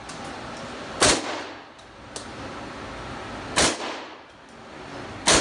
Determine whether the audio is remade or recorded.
recorded